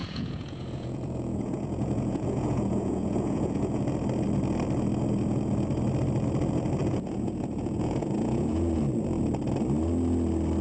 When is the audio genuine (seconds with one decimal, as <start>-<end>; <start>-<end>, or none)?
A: 3.8-6.8; 8.8-10.6